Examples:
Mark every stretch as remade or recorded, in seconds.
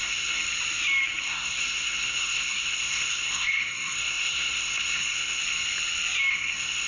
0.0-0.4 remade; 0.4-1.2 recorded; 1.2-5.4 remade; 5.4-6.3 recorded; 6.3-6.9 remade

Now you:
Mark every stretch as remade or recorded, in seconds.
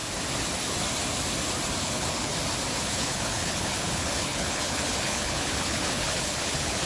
0.0-1.8 recorded; 1.8-2.3 remade; 2.3-2.8 recorded; 2.8-6.9 remade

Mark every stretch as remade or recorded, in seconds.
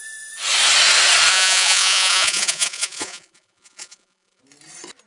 0.0-1.3 recorded; 1.3-4.4 remade; 4.4-5.1 recorded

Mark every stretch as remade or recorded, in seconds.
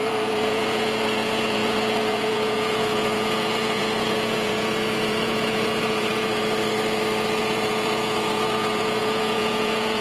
0.0-6.4 remade; 6.4-7.4 recorded; 7.4-10.0 remade